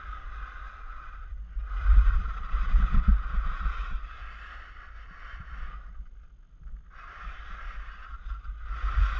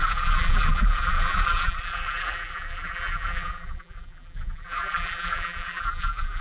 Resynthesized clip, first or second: second